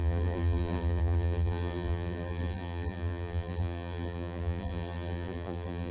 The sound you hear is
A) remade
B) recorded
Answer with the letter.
A